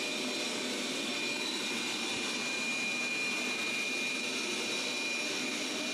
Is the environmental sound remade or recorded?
recorded